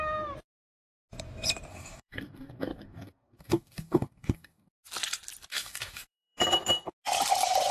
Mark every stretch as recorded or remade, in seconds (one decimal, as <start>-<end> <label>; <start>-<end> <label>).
0.0-1.7 recorded; 1.7-4.7 remade; 4.7-5.5 recorded; 5.5-6.4 remade; 6.4-7.7 recorded